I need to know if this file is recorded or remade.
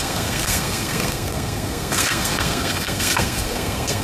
remade